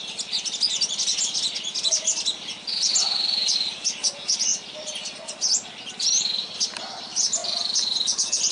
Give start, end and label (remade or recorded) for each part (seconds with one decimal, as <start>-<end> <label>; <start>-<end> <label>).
0.0-7.4 recorded; 7.4-8.5 remade